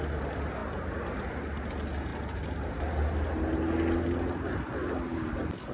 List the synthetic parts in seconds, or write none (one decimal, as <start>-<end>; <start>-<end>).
none